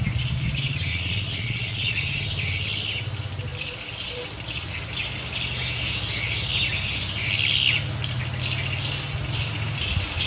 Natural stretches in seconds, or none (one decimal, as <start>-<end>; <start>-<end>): 0.0-0.9; 2.0-10.3